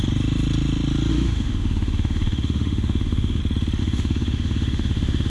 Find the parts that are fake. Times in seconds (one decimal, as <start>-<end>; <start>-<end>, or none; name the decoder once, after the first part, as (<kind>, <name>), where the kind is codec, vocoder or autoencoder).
1.1-3.4 (autoencoder, DAC-VAE); 3.8-5.3